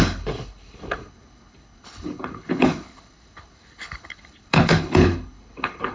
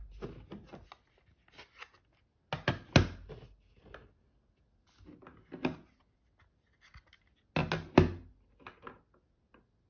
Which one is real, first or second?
second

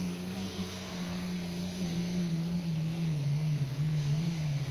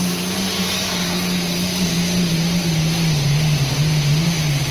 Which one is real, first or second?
second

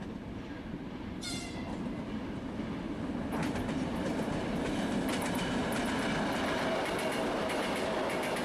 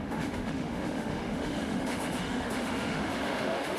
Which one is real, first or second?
first